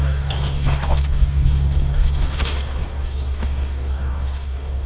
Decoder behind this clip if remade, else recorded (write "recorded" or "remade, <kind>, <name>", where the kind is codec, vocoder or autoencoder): remade, codec, DAC